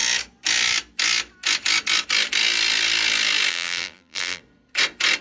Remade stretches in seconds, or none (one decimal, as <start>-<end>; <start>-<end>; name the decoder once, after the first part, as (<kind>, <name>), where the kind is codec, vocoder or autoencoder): 3.5-4.4 (vocoder, BigVGAN v2)